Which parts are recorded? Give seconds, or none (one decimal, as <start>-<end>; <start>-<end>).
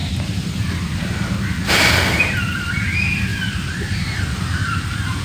0.0-3.3; 4.2-5.2